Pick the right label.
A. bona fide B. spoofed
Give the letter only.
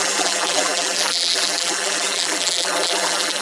B